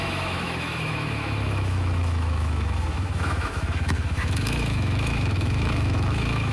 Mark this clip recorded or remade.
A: remade